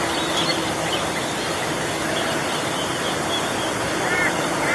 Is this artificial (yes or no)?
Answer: no